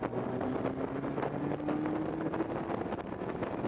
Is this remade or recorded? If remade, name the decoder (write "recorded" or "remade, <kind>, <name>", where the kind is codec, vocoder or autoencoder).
recorded